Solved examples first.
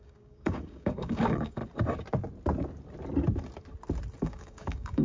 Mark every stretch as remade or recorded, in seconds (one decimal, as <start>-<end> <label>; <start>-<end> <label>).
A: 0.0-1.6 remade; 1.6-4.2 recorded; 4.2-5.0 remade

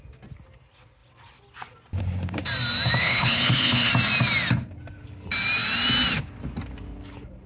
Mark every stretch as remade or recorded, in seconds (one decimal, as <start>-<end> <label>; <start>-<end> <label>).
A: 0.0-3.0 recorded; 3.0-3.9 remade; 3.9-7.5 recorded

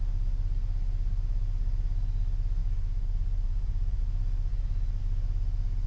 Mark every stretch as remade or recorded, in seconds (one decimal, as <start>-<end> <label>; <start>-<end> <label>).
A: 0.0-2.6 recorded; 2.6-4.0 remade; 4.0-4.5 recorded; 4.5-5.0 remade; 5.0-5.9 recorded

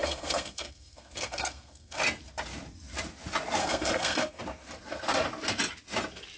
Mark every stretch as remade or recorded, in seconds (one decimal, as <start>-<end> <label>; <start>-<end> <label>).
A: 0.0-2.0 remade; 2.0-3.6 recorded; 3.6-4.4 remade; 4.4-6.4 recorded

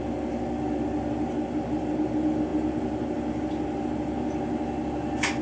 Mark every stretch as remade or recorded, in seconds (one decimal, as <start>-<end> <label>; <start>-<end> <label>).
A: 0.0-5.4 recorded

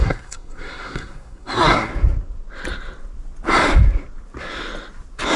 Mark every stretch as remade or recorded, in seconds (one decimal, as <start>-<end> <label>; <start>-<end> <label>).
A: 0.0-1.9 remade; 1.9-5.4 recorded

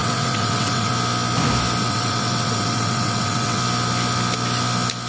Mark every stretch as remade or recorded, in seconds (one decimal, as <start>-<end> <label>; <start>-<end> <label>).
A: 0.0-0.9 remade; 0.9-1.8 recorded; 1.8-3.6 remade; 3.6-5.1 recorded

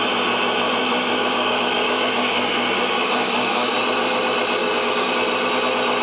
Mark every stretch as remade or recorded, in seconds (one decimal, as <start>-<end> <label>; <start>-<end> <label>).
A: 0.0-0.8 recorded; 0.8-3.8 remade; 3.8-4.6 recorded; 4.6-5.1 remade; 5.1-6.0 recorded